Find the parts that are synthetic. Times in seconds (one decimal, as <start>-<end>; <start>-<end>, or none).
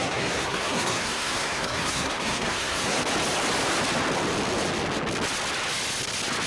0.0-3.0